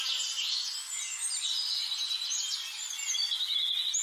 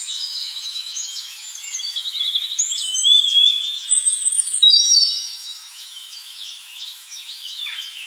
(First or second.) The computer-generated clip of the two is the second